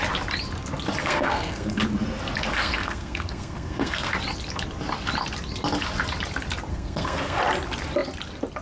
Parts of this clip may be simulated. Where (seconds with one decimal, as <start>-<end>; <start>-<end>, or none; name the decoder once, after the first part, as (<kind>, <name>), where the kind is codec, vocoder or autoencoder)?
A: 1.0-1.8 (codec, SNAC); 2.5-4.1; 6.7-7.4